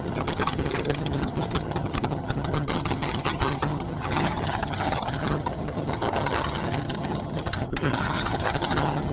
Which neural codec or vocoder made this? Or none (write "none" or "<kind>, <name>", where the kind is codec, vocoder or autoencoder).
vocoder, HiFi-GAN